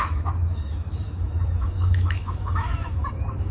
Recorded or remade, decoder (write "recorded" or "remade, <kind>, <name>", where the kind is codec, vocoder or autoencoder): remade, autoencoder, DAC-VAE